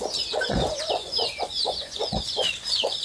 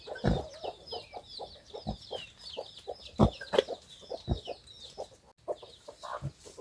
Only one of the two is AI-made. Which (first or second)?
first